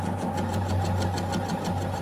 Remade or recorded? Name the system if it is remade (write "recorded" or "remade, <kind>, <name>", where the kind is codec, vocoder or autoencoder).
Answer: recorded